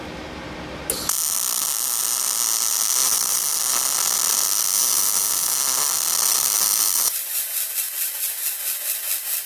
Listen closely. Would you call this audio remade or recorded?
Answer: recorded